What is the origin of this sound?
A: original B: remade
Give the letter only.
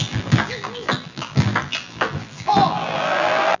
B